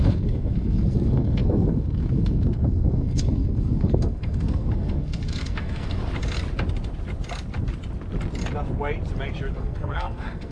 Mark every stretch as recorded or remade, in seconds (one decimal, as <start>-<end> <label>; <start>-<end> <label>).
0.0-6.0 remade; 6.0-9.5 recorded; 9.5-10.5 remade